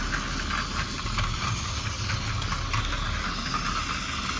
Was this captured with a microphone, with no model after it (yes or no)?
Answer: yes